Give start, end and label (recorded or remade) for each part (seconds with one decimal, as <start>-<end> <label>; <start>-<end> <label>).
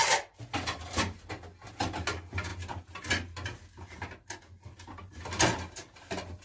0.0-1.3 remade; 1.3-6.4 recorded